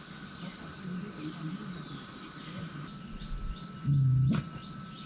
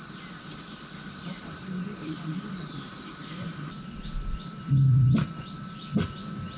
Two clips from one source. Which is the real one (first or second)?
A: first